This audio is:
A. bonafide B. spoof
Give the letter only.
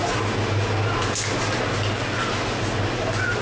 A